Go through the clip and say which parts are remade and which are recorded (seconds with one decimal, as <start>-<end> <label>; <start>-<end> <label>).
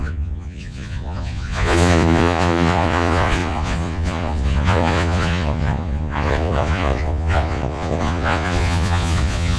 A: 0.0-9.6 remade